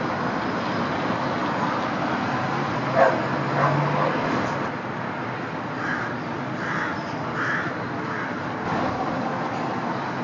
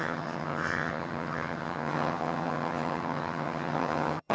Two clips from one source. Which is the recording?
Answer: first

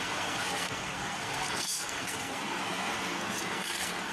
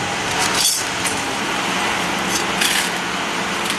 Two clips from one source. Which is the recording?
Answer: second